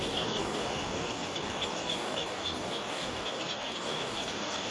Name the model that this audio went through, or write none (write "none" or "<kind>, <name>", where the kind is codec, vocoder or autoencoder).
codec, DAC